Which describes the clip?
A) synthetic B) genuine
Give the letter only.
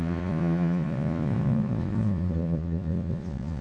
A